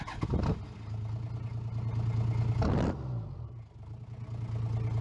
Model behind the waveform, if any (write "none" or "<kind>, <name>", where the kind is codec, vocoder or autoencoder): none